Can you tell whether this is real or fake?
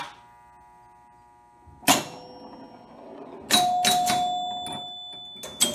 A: real